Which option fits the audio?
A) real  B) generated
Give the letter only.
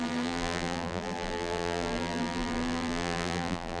B